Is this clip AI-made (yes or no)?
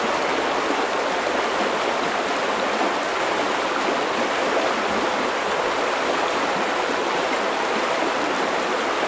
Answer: no